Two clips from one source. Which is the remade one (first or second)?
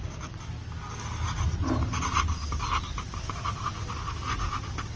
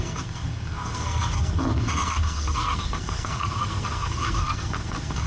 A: second